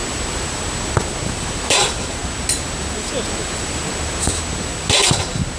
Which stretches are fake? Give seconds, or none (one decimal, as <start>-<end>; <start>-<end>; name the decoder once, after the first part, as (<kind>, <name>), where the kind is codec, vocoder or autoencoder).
1.3-2.2 (vocoder, BigVGAN v2)